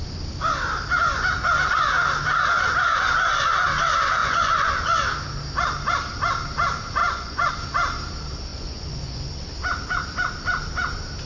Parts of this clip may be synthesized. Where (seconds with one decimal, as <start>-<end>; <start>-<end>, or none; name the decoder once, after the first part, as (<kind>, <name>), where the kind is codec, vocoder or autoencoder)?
4.2-4.7 (vocoder, Vocos); 7.0-7.5; 8.5-9.3